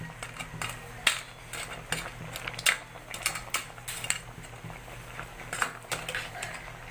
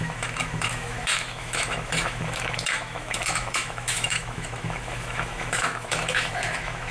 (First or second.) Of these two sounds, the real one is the first